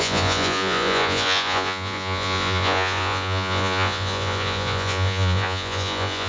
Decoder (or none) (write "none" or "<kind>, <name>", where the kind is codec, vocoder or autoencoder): vocoder, Vocos